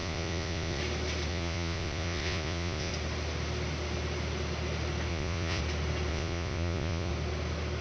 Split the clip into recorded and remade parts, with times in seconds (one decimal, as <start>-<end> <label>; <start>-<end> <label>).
0.0-0.8 remade; 0.8-1.3 recorded; 1.3-2.9 remade; 2.9-5.1 recorded; 5.1-5.6 remade; 5.6-6.1 recorded; 6.1-7.1 remade; 7.1-7.8 recorded